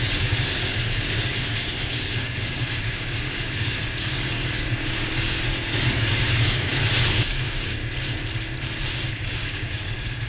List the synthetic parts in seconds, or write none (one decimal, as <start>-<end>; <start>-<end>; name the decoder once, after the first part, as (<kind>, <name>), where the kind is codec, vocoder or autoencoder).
0.0-7.8 (codec, DAC); 9.1-10.3